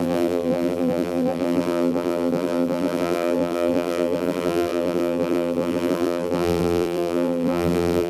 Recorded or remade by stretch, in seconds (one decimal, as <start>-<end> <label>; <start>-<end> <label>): 0.0-8.1 remade